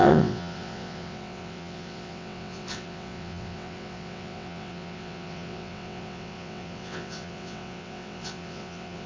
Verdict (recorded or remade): remade